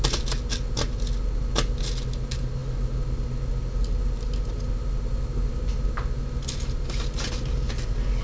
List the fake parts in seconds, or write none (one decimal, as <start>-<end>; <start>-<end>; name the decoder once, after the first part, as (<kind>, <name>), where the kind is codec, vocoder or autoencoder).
none

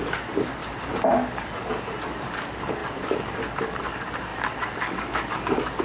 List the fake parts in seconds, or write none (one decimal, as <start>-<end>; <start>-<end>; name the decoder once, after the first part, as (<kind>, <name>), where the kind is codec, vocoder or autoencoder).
0.0-0.6 (codec, DAC); 1.3-5.8

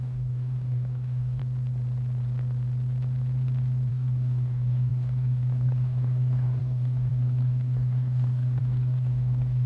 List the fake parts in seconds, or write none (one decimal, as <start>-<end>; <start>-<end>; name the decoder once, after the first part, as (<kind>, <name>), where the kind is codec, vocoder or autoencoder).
0.0-1.4 (codec, DAC); 3.9-9.7

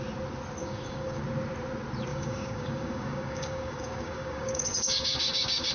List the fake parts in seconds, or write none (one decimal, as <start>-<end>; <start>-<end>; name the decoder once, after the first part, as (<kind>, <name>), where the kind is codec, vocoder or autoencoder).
0.6-1.2 (codec, DAC); 2.1-5.7

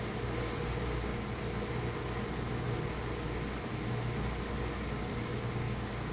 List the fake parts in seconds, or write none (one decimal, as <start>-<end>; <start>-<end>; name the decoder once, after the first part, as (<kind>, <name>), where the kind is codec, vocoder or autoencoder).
5.1-6.1 (codec, DAC)